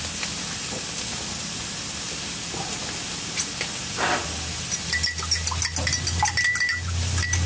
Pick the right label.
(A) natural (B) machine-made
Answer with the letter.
A